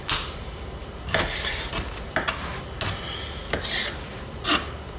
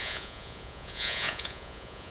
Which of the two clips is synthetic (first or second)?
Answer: second